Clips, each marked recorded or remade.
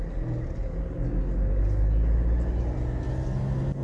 recorded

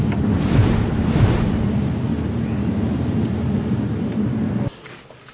recorded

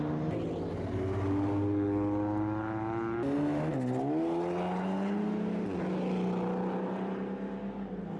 recorded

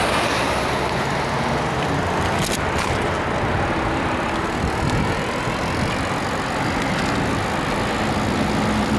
recorded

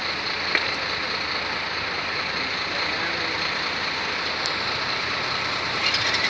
remade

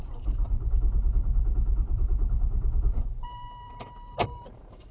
remade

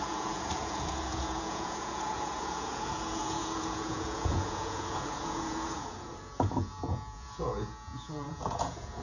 remade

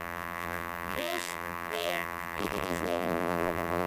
remade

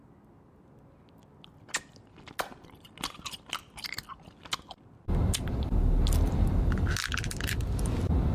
recorded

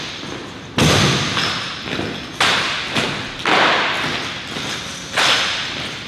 recorded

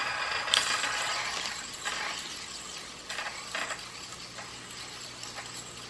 recorded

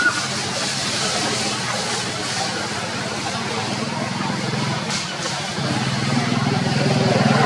recorded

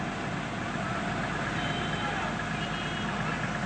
recorded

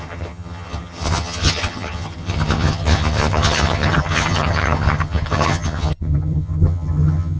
remade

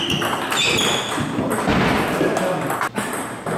recorded